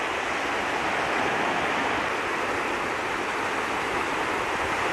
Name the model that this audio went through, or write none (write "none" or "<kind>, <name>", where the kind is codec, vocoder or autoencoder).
none